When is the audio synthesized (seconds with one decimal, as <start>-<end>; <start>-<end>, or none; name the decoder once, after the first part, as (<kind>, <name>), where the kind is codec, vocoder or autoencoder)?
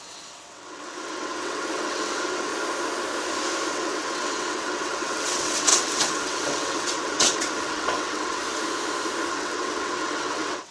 0.0-2.5 (vocoder, WaveNeXt); 3.7-8.4; 9.3-10.7